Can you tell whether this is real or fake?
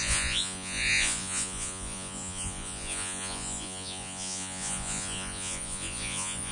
fake